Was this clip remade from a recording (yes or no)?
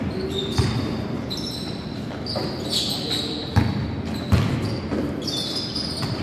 no